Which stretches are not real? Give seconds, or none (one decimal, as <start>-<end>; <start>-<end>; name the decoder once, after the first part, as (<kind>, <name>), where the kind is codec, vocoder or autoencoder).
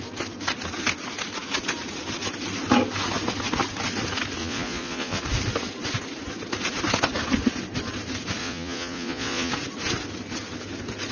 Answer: 4.4-5.2 (vocoder, Vocos); 8.4-9.5